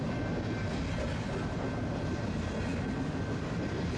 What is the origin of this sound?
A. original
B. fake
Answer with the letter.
A